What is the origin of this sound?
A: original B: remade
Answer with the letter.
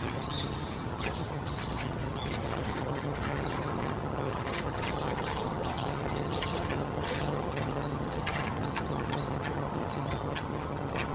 B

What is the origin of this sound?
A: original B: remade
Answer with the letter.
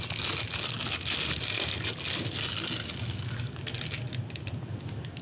A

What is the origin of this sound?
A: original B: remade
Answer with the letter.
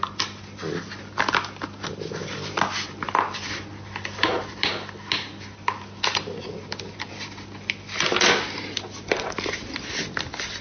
A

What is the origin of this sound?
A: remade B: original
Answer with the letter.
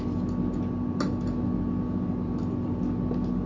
B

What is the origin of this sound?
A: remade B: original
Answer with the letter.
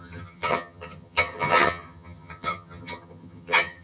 A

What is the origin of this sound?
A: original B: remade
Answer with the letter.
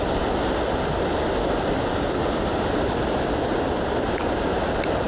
A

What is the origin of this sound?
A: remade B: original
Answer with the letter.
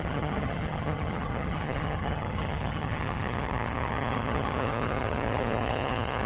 A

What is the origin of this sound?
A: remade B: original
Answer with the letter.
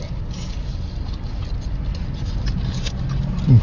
B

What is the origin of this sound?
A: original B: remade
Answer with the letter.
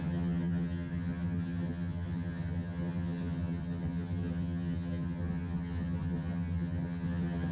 B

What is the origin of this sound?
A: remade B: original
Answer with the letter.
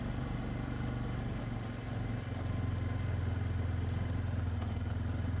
B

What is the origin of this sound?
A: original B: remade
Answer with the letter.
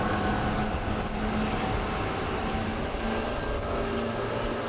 A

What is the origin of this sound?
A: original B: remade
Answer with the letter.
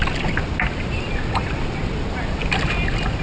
A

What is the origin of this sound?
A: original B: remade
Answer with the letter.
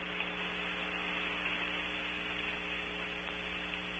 A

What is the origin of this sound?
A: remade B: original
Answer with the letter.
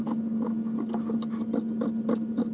B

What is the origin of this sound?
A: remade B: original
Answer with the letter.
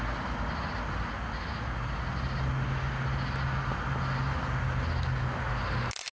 B